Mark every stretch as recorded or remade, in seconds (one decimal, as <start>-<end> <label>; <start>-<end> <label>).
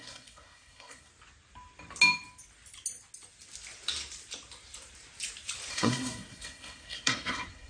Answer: 0.0-1.1 remade; 1.1-5.7 recorded; 5.7-7.7 remade